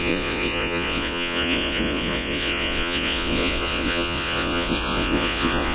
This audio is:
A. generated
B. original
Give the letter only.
A